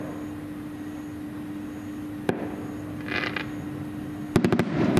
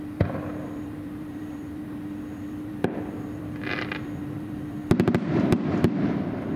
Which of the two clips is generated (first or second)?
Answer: second